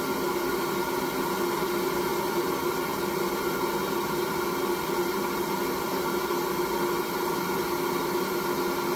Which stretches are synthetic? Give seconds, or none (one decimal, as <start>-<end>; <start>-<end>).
none